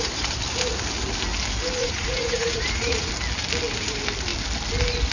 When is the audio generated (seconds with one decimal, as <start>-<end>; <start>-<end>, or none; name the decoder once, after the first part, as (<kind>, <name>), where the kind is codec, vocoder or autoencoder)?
1.8-3.1 (vocoder, Vocos)